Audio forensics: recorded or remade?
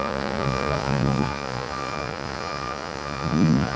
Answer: remade